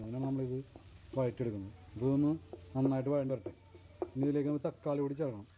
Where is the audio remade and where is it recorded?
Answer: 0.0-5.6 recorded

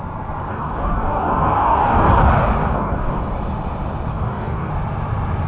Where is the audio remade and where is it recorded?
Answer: 0.0-0.5 recorded; 0.5-2.1 remade; 2.1-2.6 recorded; 2.6-3.2 remade; 3.2-4.1 recorded; 4.1-4.7 remade; 4.7-5.5 recorded

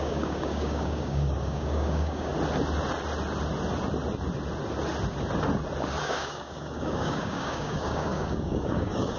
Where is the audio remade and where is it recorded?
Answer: 0.0-2.3 remade; 2.3-6.0 recorded; 6.0-9.2 remade

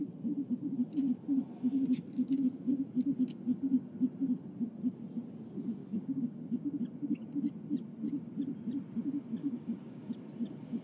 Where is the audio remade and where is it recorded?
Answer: 0.0-5.8 recorded; 5.8-6.4 remade; 6.4-9.4 recorded; 9.4-10.1 remade; 10.1-10.8 recorded

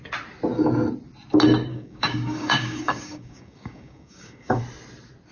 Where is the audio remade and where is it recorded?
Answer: 0.0-1.7 recorded; 1.7-4.6 remade; 4.6-5.3 recorded

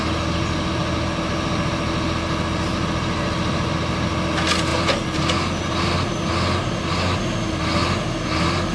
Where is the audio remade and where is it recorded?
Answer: 0.0-8.7 recorded

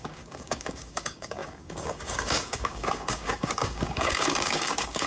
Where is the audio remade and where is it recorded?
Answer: 0.0-5.1 remade